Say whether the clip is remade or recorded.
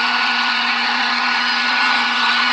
remade